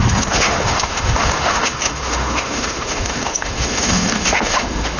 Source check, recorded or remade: remade